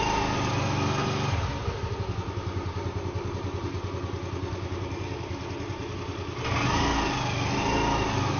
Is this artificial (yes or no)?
no